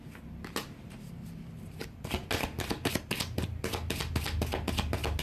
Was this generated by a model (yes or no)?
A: no